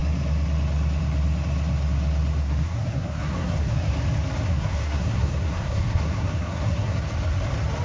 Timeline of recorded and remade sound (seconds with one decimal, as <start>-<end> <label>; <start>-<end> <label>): 0.0-2.4 recorded; 2.4-3.9 remade; 3.9-4.5 recorded; 4.5-7.0 remade; 7.0-7.8 recorded